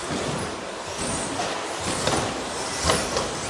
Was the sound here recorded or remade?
recorded